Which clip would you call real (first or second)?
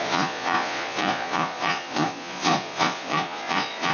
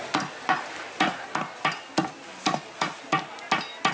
second